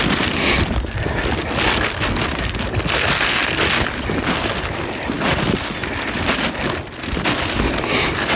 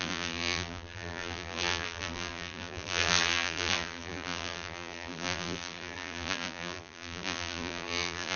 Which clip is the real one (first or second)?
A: first